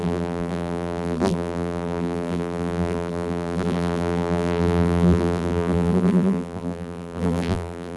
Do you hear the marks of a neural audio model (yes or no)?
yes